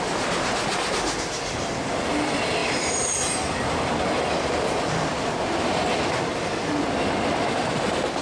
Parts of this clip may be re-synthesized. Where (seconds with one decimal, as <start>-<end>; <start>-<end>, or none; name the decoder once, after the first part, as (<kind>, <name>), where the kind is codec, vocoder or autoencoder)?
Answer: none